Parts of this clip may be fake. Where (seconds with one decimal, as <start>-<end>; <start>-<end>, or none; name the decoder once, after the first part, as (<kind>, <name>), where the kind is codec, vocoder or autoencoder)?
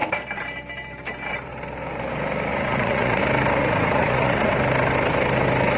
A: 2.5-3.2 (vocoder, Vocos); 3.6-4.5